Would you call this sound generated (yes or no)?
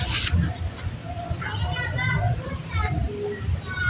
no